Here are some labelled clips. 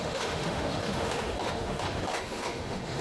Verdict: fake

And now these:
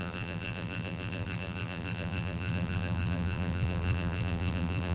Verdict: fake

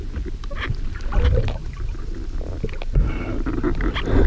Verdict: real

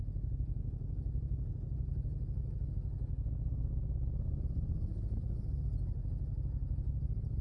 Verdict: real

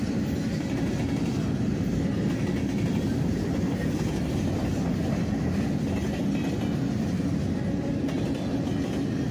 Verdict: real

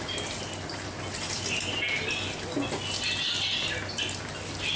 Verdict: real